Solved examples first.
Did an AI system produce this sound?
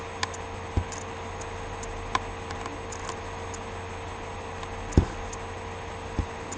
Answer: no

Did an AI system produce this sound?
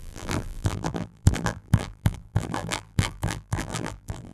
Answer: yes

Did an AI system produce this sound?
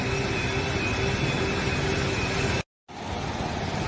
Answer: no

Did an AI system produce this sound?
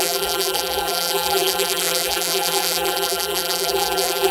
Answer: yes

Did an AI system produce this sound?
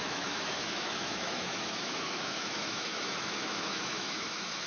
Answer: yes